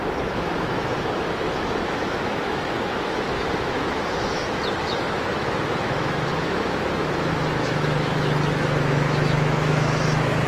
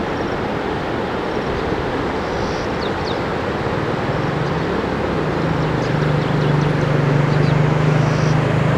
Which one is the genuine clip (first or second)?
second